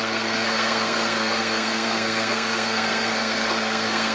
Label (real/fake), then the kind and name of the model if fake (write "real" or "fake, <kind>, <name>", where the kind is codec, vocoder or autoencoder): fake, codec, SNAC